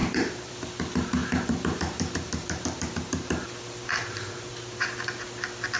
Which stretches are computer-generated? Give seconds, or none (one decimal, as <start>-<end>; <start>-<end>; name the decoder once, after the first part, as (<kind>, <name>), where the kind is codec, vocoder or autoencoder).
0.0-0.5 (vocoder, BigVGAN v2); 1.2-3.6; 4.0-4.5